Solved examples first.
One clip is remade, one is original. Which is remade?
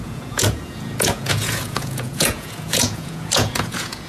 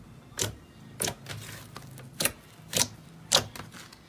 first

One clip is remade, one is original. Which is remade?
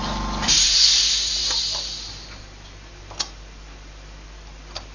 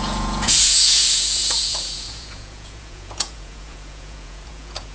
second